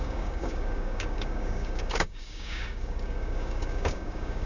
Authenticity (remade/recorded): remade